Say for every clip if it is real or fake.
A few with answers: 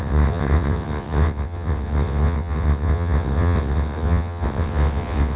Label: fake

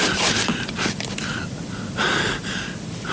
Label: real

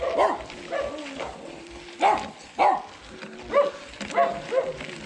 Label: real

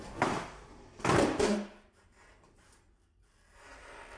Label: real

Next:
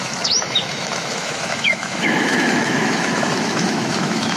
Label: fake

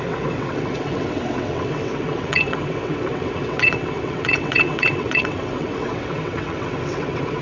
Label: fake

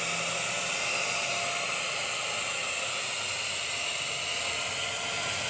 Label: real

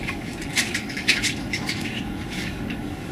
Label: fake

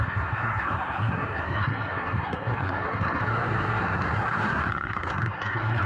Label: fake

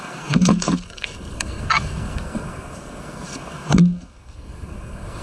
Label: fake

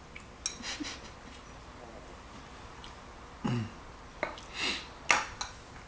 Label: real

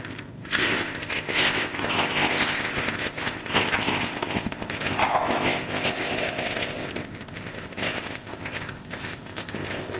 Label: fake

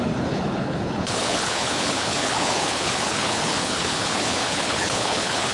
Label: fake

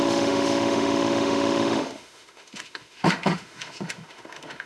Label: fake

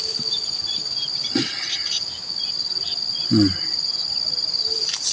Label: real